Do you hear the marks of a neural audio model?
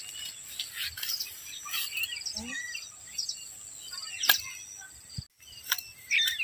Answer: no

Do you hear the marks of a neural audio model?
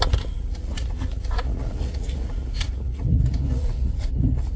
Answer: yes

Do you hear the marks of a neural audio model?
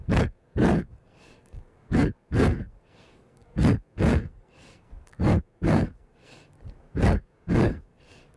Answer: yes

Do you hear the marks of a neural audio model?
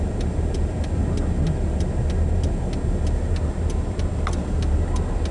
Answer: no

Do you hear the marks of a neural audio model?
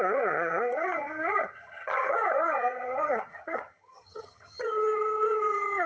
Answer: yes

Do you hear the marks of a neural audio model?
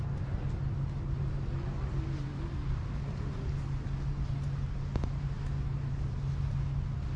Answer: no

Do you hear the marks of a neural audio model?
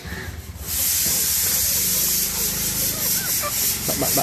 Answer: yes